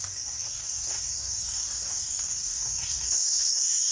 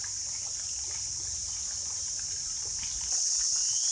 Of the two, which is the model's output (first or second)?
first